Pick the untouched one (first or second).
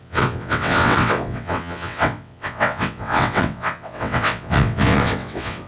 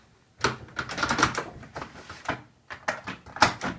second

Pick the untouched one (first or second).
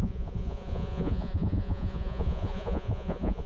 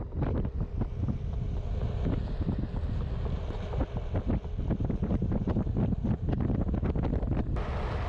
second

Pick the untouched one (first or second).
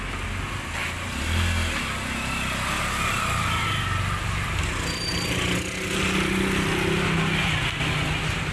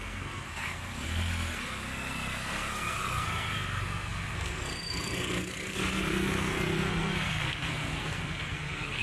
first